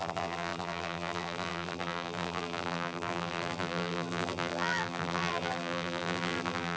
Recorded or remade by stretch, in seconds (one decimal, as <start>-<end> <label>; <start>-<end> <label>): 0.0-6.8 remade